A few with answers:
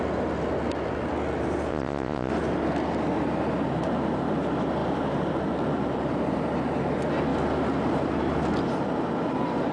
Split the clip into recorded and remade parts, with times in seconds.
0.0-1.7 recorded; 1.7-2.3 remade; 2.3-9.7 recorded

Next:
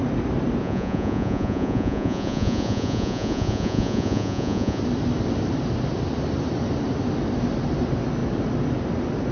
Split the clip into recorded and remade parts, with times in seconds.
0.0-0.6 recorded; 0.6-4.8 remade; 4.8-9.3 recorded

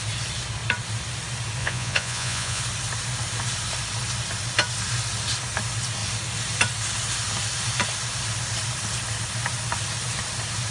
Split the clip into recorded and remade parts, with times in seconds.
0.0-1.6 recorded; 1.6-2.6 remade; 2.6-10.7 recorded

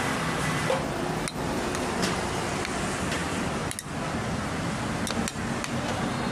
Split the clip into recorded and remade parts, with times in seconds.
0.0-6.3 recorded

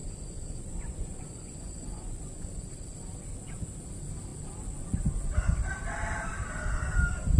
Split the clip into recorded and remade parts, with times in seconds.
0.0-2.7 remade; 2.7-7.4 recorded